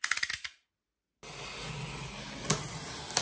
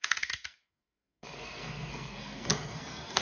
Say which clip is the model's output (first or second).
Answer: second